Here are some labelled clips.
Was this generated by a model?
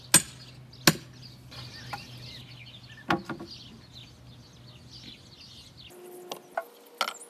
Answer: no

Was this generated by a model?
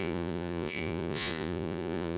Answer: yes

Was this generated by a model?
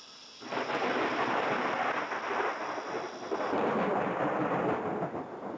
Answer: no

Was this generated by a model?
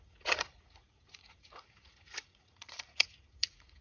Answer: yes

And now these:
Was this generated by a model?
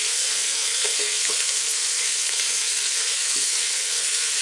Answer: yes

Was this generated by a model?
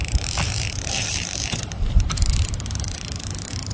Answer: yes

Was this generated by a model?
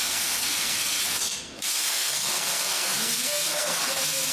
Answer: yes